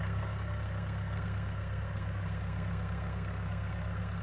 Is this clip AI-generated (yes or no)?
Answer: yes